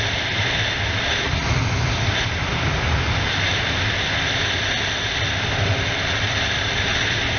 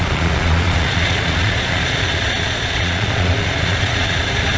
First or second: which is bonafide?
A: first